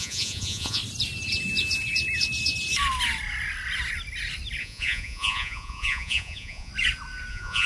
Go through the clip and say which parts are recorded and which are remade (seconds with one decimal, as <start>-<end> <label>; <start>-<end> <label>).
0.0-0.8 remade; 0.8-4.6 recorded; 4.6-6.7 remade; 6.7-7.3 recorded; 7.3-7.7 remade